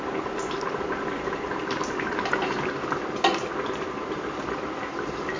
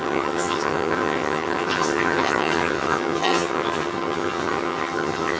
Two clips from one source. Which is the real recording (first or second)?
first